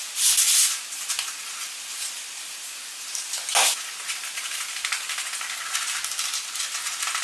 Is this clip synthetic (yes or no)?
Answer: no